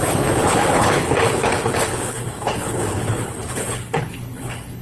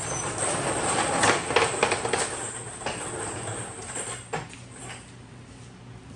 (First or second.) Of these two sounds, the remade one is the first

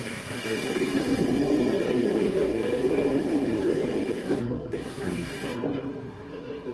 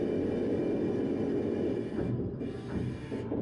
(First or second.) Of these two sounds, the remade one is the first